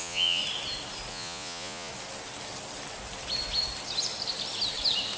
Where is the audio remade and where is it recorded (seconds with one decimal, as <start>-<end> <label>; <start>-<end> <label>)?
0.0-0.4 remade; 0.4-1.1 recorded; 1.1-1.9 remade; 1.9-5.2 recorded